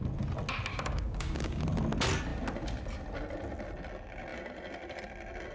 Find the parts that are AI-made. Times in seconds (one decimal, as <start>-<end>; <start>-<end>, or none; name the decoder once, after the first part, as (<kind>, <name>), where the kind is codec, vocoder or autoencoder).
0.7-1.6 (codec, DAC)